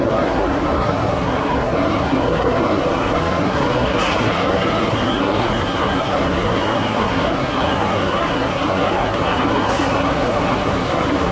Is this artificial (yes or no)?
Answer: yes